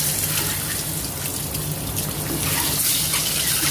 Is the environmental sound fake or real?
real